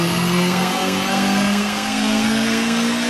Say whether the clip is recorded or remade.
remade